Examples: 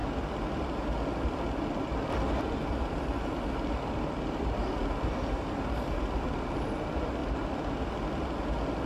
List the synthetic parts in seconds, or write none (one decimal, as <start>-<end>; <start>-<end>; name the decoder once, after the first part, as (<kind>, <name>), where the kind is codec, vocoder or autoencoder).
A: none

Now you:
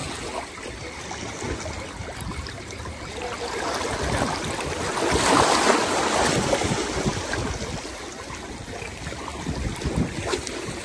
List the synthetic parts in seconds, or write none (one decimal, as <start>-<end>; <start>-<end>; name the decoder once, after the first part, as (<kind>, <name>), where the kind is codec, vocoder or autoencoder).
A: none

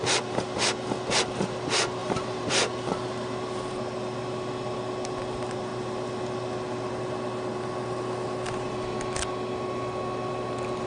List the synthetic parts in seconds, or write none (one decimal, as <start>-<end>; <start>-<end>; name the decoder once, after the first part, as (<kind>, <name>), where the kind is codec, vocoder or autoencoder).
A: 2.0-2.6 (vocoder, BigVGAN v2)